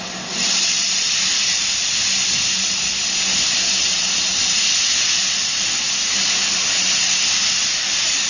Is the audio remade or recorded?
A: recorded